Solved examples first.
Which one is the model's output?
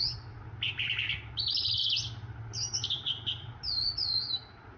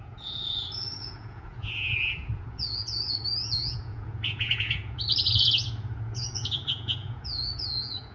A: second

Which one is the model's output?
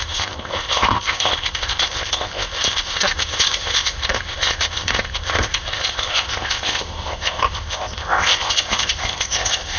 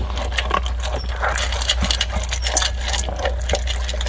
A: first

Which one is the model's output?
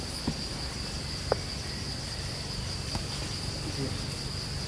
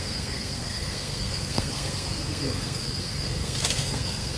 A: second